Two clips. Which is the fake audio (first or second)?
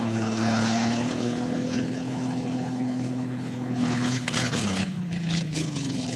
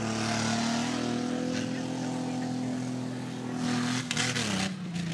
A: first